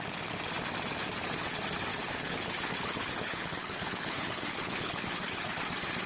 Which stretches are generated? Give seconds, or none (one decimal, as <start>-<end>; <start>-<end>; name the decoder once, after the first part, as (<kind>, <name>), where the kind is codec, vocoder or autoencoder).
1.9-5.6 (codec, HILCodec)